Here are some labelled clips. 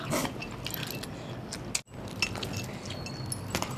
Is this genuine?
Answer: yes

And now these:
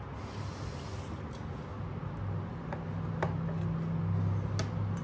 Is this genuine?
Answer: yes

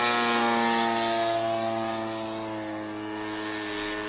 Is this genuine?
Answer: yes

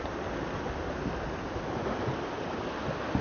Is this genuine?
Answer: yes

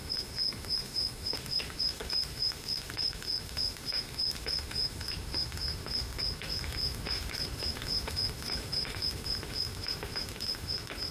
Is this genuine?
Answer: no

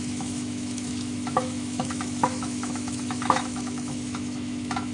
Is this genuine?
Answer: no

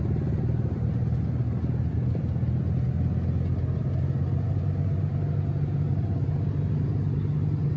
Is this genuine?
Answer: yes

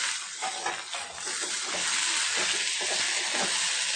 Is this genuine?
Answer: yes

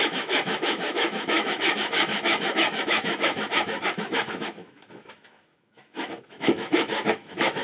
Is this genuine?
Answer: no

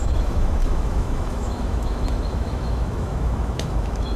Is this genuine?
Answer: no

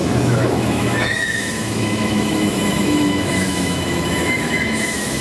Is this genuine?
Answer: no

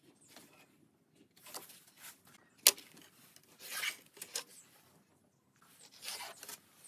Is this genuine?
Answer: yes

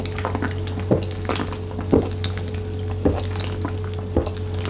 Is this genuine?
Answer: yes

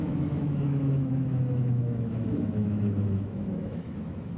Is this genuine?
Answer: no